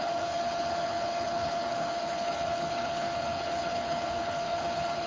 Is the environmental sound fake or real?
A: fake